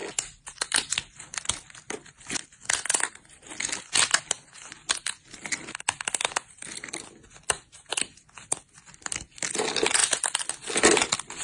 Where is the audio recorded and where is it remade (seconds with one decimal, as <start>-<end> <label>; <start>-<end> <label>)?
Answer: 0.0-2.4 remade; 2.4-4.8 recorded; 4.8-5.8 remade; 5.8-8.1 recorded; 8.1-8.9 remade; 8.9-10.0 recorded; 10.0-10.5 remade; 10.5-11.4 recorded